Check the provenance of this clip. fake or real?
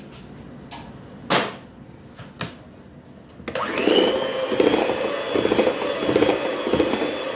real